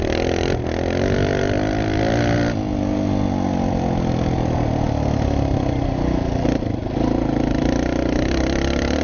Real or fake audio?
real